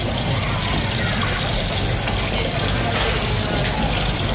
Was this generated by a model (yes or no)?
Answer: no